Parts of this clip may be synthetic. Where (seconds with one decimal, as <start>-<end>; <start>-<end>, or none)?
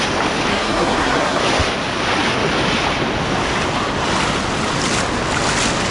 0.5-1.4